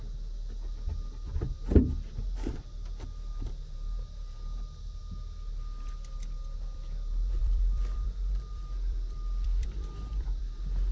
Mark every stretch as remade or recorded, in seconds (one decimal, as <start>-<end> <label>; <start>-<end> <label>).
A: 0.0-7.4 recorded; 7.4-10.4 remade; 10.4-10.9 recorded